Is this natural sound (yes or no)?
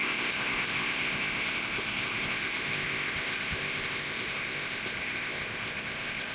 no